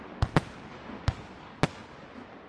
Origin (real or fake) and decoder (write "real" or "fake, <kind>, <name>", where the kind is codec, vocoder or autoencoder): real